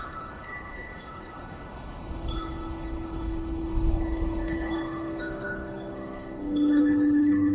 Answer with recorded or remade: remade